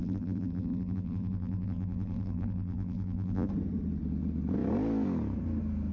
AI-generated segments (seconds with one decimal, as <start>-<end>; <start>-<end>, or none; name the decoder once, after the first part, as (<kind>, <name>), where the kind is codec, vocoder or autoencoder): 0.0-3.5 (vocoder, BigVGAN v2)